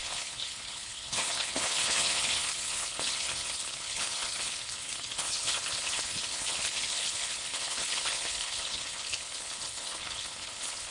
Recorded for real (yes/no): no